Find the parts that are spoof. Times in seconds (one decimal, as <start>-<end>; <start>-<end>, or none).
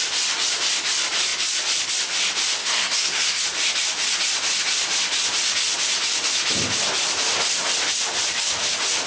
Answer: 2.6-3.4